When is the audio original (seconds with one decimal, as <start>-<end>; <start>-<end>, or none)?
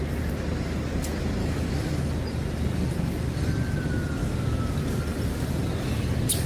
0.0-1.4; 2.1-6.5